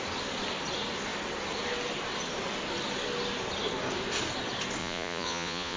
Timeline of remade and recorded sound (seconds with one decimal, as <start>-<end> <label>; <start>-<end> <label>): 0.0-4.8 recorded; 4.8-5.8 remade